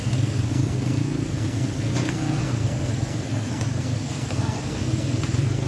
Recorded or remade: remade